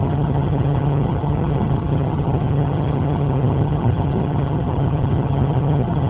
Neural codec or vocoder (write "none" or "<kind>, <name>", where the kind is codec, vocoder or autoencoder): vocoder, HiFi-GAN